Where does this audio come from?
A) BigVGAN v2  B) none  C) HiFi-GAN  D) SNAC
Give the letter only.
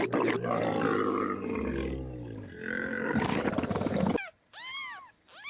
B